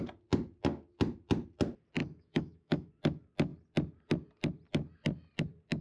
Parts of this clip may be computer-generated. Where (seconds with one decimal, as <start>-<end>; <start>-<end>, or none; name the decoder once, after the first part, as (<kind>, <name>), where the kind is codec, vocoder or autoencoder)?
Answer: 2.0-2.9 (autoencoder, DAC-VAE)